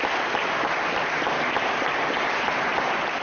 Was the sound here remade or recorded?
recorded